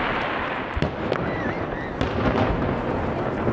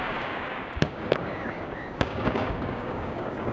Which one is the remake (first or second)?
second